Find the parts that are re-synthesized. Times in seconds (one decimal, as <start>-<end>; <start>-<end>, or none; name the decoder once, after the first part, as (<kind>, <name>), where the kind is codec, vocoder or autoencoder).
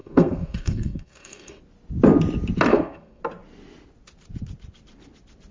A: 0.0-1.6 (codec, SNAC); 2.7-3.2